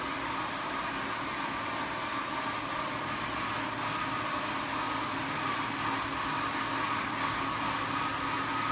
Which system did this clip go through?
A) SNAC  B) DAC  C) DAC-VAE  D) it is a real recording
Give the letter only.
D